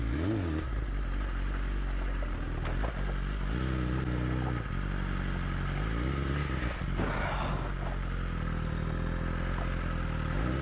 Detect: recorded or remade recorded